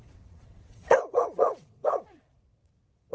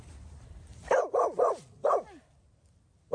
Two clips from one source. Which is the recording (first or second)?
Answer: second